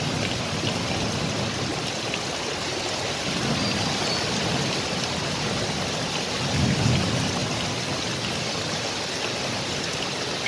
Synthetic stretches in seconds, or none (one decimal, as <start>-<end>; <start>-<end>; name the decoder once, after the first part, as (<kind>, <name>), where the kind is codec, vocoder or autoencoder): none